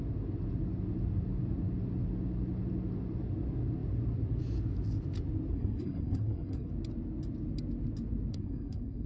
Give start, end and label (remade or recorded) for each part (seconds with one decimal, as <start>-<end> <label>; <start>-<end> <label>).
0.0-5.5 recorded; 5.5-6.7 remade; 6.7-8.3 recorded; 8.3-9.1 remade

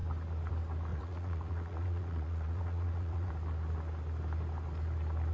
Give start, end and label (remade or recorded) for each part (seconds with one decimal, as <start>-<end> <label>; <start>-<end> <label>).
0.0-0.9 recorded; 0.9-3.3 remade; 3.3-5.3 recorded

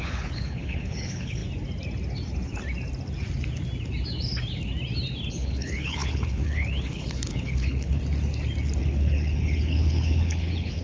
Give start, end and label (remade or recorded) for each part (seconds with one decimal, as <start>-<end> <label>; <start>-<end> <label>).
0.0-1.4 remade; 1.4-5.3 recorded; 5.3-8.0 remade; 8.0-8.8 recorded; 8.8-10.8 remade